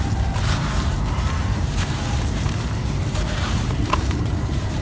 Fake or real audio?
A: fake